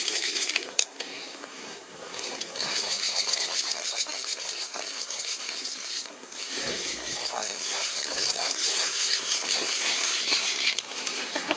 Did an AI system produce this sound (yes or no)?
yes